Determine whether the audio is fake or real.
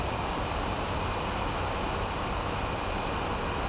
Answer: real